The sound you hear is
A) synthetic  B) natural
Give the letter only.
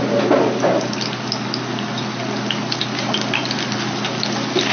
B